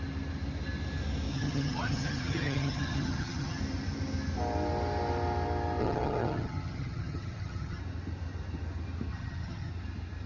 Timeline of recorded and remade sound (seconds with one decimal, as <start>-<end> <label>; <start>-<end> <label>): 0.0-1.3 recorded; 1.3-3.6 remade; 3.6-5.8 recorded; 5.8-7.8 remade; 7.8-9.1 recorded; 9.1-9.7 remade; 9.7-10.3 recorded